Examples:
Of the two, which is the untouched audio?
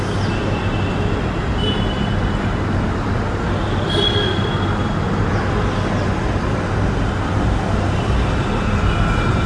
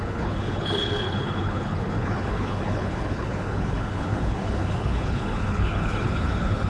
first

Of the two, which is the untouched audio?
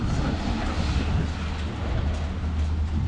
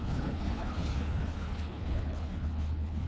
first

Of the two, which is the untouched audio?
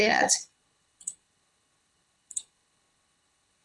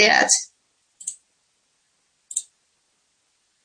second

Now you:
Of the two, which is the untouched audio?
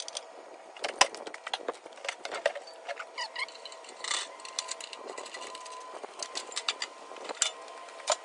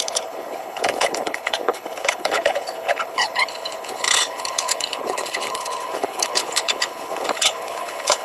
first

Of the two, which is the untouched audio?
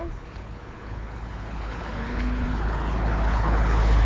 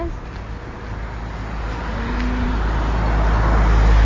second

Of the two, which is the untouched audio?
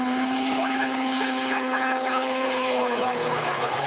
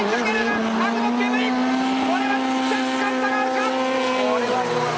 second